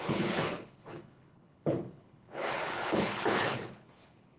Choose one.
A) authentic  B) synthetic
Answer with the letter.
B